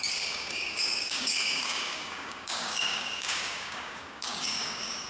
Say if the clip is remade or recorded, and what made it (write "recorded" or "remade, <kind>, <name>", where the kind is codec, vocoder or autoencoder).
remade, codec, DAC